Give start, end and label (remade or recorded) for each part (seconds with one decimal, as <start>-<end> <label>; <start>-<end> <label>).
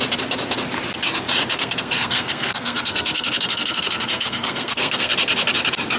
0.0-1.5 recorded; 1.5-5.1 remade; 5.1-6.0 recorded